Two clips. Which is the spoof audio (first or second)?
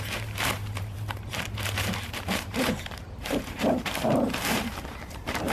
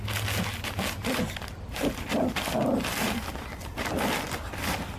first